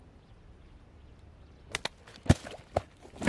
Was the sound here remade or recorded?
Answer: recorded